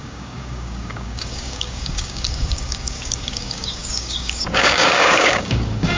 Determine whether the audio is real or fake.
fake